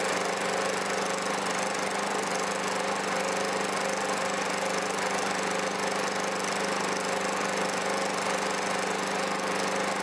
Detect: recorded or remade recorded